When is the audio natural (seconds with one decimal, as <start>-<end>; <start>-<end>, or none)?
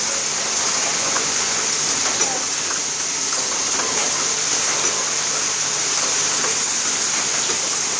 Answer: 0.0-0.9; 1.6-8.0